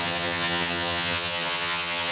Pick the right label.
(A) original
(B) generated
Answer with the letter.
B